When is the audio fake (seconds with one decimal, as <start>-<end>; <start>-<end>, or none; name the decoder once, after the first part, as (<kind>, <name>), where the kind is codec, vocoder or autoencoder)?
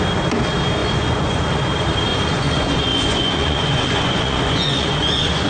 0.8-1.5 (vocoder, Vocos); 2.1-5.5